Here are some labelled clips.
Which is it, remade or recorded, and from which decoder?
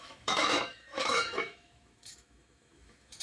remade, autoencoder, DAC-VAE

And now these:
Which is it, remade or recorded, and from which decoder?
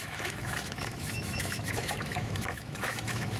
remade, autoencoder, DAC-VAE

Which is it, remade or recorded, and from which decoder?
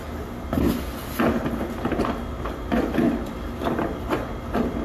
recorded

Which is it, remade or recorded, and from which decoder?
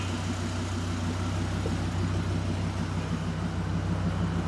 recorded